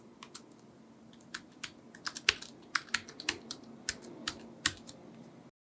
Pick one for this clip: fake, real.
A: real